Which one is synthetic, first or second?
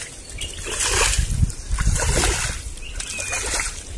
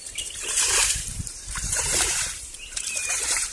second